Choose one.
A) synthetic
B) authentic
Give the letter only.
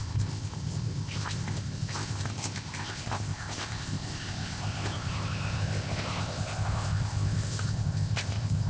A